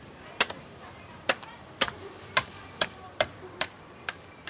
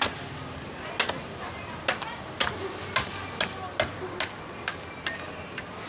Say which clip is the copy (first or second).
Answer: first